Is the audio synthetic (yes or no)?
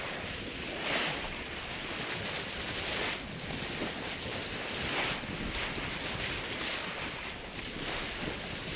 no